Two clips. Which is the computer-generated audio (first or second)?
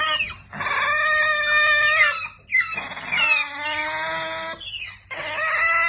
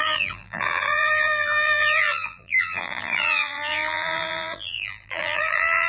second